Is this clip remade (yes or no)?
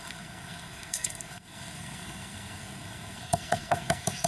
yes